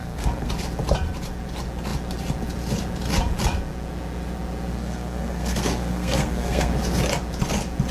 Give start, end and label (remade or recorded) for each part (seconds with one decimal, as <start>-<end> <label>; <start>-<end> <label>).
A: 0.0-0.5 remade; 0.5-4.7 recorded; 4.7-6.7 remade; 6.7-7.9 recorded